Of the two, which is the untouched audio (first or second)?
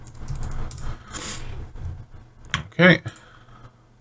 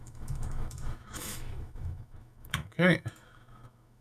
first